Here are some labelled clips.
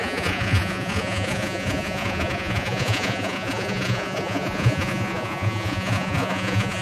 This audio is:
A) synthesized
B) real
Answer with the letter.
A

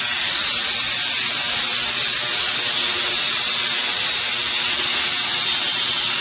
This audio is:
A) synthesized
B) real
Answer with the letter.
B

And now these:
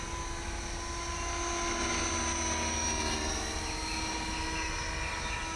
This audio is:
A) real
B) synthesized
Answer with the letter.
A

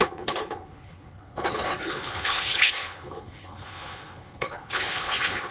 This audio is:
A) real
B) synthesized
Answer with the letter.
B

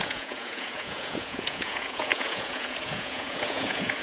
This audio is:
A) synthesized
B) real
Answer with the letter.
A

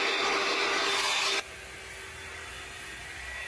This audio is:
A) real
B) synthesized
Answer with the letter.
A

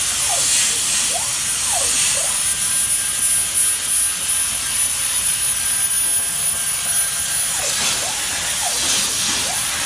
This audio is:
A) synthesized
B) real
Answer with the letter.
B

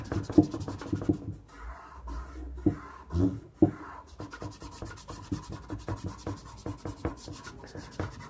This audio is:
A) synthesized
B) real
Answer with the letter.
B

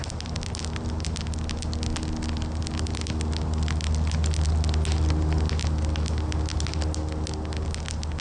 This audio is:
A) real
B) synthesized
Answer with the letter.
A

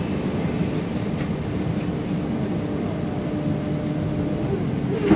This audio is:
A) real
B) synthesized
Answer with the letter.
A